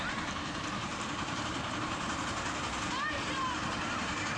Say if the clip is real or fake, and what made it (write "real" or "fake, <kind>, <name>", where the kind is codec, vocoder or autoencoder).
fake, vocoder, BigVGAN v2